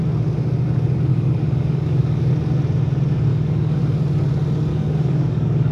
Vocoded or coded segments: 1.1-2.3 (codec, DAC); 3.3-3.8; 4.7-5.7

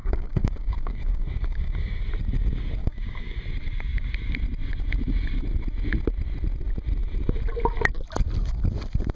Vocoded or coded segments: 0.0-2.0 (codec, DAC); 2.8-3.4

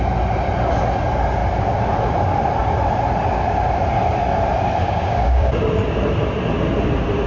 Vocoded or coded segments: 4.8-5.6 (codec, DAC)

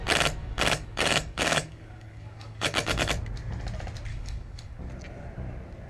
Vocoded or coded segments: 0.4-3.1 (codec, DAC); 4.1-4.8

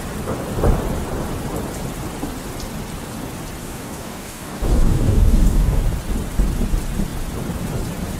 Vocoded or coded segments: 3.6-5.8 (codec, DAC)

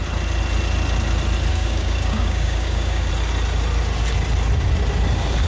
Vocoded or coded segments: 1.5-3.1 (codec, DAC)

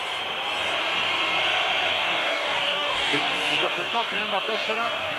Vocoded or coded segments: 1.9-5.2 (codec, DAC)

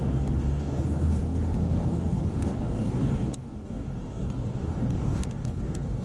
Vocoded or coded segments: 0.0-6.0 (codec, DAC)